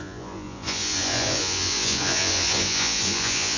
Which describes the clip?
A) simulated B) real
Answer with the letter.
A